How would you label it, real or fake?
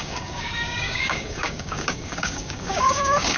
fake